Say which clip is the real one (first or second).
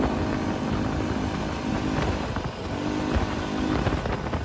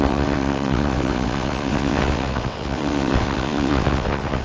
first